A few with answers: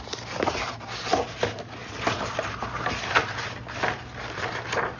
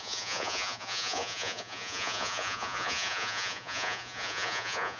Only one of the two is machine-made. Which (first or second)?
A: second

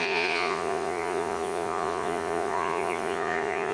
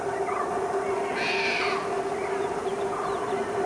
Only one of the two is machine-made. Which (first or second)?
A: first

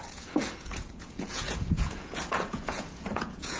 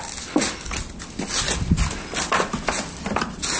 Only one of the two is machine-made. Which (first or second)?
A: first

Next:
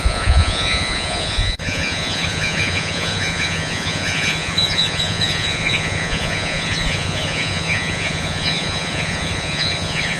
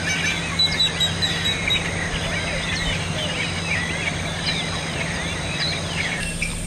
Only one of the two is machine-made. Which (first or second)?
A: first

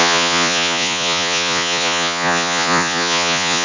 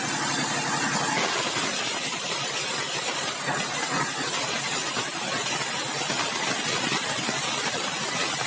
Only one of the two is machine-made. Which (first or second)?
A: first